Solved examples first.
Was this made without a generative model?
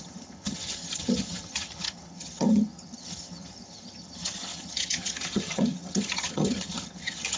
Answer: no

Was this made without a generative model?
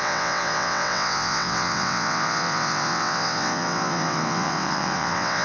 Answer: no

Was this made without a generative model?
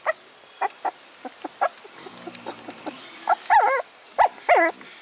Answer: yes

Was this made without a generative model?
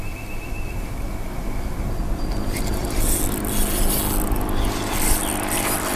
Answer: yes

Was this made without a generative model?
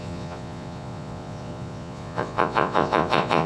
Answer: no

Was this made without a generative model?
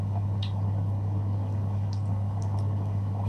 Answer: no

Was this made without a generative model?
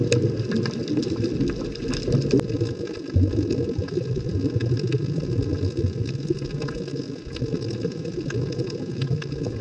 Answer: yes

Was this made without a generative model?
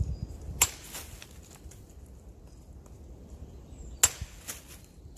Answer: yes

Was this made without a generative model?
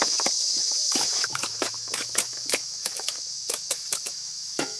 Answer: no